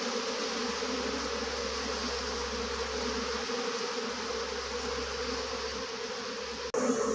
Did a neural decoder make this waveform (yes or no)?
no